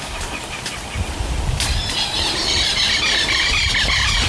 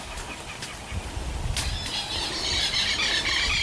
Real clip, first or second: second